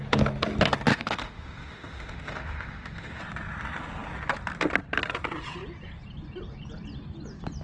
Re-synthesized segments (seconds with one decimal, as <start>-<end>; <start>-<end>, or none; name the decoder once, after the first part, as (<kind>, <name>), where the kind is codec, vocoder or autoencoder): 0.9-3.2 (autoencoder, DAC-VAE)